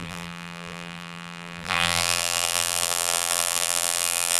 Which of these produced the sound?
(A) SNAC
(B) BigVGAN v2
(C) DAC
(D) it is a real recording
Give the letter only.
B